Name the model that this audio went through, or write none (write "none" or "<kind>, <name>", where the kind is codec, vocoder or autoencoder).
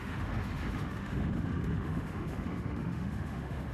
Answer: autoencoder, DAC-VAE